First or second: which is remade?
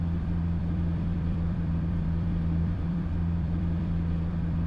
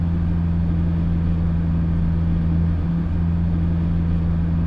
first